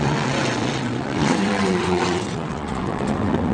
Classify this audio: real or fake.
fake